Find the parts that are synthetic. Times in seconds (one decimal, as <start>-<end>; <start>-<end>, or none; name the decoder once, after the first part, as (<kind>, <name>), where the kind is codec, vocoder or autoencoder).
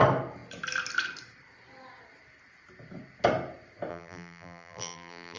3.9-5.4 (vocoder, BigVGAN v2)